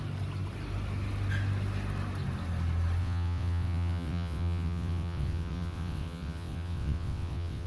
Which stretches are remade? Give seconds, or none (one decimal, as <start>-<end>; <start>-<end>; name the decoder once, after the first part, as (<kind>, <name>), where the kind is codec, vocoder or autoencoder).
3.0-7.7 (vocoder, WaveNeXt)